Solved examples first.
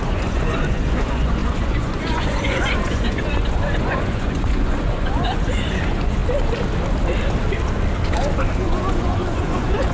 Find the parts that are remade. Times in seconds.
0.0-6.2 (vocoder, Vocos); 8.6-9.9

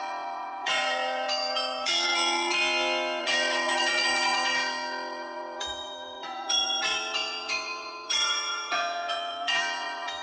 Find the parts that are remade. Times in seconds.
0.0-2.6 (vocoder, Vocos); 3.2-10.2

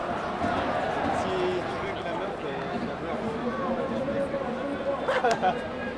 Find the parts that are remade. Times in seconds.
5.2-6.0 (vocoder, BigVGAN v2)